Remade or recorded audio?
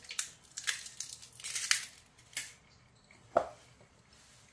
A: recorded